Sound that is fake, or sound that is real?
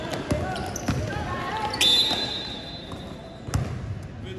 real